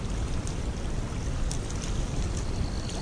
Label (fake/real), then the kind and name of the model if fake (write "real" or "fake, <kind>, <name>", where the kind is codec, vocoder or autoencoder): real